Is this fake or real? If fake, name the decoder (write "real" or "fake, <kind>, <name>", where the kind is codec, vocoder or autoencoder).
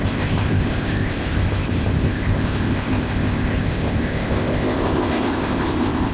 fake, codec, ZipCodec